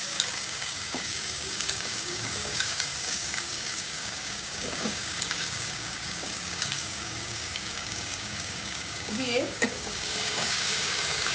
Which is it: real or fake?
fake